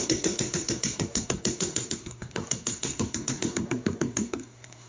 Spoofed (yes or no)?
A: yes